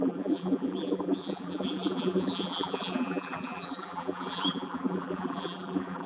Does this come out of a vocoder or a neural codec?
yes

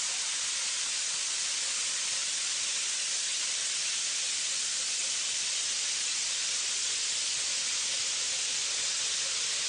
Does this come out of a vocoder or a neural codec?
no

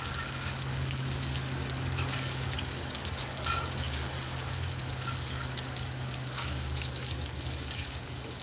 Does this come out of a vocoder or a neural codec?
yes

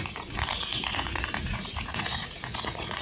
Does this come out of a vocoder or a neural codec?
yes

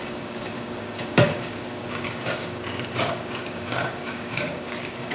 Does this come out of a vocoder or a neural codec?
yes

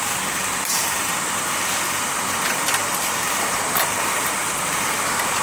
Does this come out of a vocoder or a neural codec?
yes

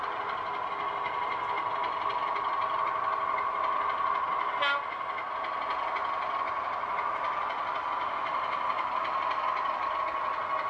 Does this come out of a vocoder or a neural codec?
no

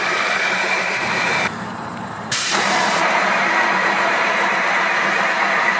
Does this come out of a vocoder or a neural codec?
yes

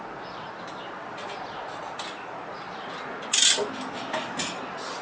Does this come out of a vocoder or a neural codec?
no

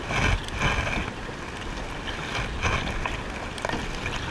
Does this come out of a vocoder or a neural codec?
no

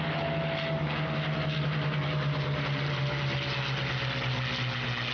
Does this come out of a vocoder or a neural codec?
no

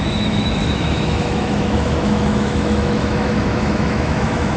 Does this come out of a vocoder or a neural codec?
yes